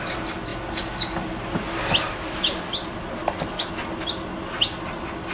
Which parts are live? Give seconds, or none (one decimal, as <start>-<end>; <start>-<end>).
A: 0.0-5.3